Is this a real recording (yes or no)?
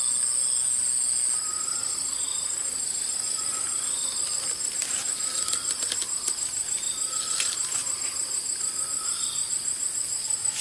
yes